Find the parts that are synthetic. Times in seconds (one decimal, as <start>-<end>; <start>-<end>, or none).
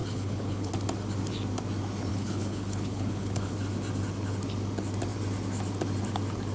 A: 0.0-0.7; 2.1-3.5